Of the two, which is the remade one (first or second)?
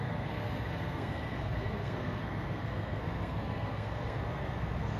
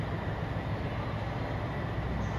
first